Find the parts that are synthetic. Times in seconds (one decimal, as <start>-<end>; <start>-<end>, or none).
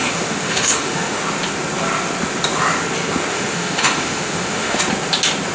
0.0-1.2; 3.3-4.8